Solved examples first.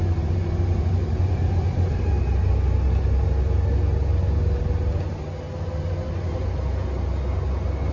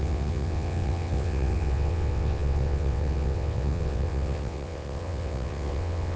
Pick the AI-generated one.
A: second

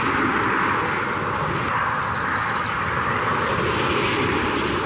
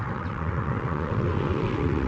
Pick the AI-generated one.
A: second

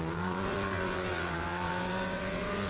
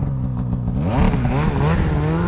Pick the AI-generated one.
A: first